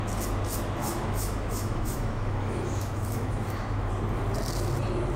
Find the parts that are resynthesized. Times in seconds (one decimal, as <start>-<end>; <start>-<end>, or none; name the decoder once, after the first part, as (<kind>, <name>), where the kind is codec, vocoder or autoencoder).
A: 0.8-3.9 (autoencoder, DAC-VAE)

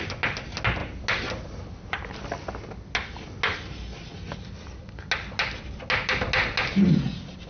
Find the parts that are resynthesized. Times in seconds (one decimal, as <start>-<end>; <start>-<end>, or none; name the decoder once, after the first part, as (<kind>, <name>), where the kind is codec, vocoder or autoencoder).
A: none

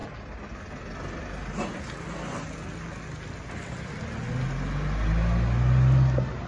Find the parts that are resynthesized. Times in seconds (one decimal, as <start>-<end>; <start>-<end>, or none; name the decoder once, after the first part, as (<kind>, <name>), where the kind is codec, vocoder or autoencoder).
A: none

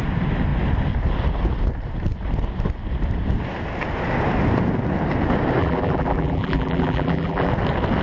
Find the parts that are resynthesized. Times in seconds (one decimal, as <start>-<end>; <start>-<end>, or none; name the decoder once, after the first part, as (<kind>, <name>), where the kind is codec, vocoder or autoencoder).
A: 5.6-7.5 (vocoder, BigVGAN v2)